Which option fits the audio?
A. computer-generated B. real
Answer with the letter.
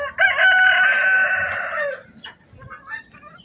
B